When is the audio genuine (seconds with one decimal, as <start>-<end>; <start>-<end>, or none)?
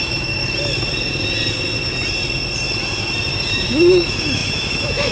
0.4-3.5